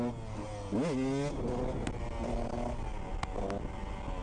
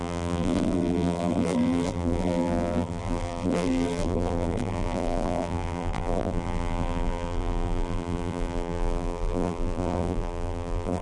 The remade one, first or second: second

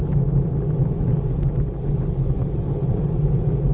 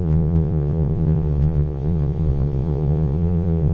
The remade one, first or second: second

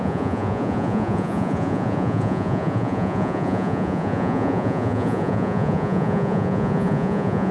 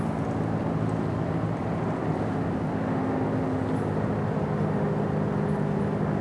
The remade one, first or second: first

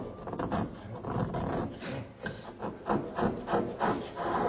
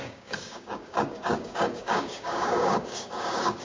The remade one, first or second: second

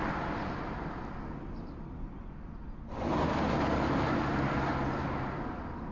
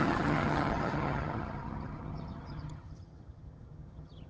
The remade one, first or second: second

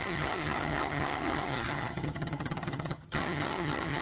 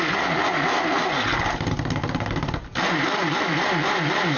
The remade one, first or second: first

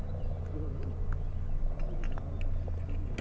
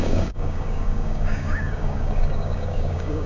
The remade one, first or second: second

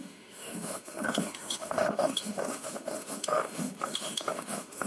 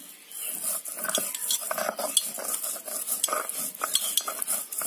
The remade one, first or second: first